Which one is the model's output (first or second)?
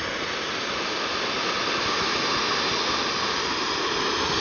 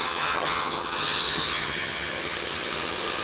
second